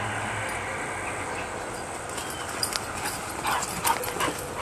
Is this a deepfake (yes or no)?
no